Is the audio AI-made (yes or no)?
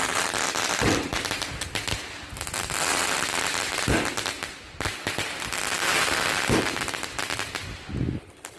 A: no